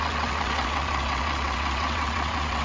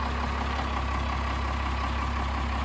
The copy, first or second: first